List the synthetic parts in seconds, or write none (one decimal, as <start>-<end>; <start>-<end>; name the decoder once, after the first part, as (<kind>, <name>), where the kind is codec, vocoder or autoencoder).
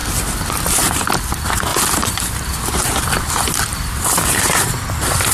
0.0-0.5 (vocoder, BigVGAN v2); 1.7-3.0; 3.7-4.8